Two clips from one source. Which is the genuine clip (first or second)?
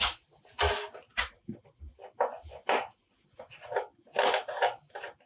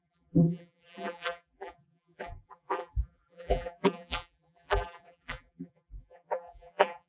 first